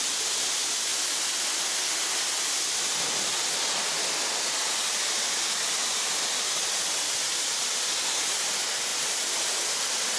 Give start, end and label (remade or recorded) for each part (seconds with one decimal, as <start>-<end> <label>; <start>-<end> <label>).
0.0-10.2 recorded